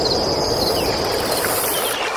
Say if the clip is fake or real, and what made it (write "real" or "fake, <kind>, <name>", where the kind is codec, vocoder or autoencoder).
real